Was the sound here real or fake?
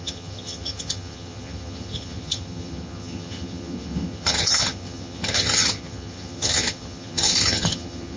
fake